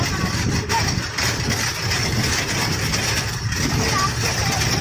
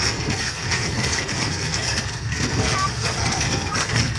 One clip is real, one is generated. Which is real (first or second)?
first